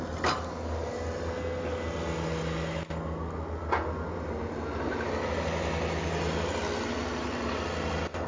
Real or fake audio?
real